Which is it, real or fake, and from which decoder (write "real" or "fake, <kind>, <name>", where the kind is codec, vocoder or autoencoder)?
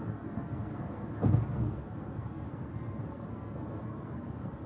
fake, codec, SNAC